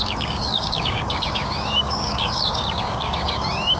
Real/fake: fake